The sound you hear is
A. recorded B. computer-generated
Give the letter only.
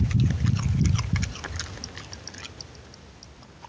A